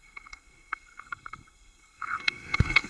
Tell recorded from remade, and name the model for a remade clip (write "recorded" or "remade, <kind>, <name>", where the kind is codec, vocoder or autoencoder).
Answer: remade, codec, SNAC